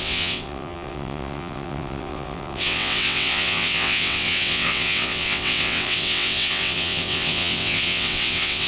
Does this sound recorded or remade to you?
remade